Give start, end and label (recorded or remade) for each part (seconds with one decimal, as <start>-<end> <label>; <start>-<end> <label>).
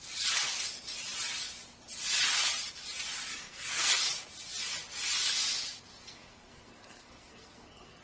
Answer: 0.0-3.3 recorded; 3.3-3.9 remade; 3.9-6.1 recorded; 6.1-8.0 remade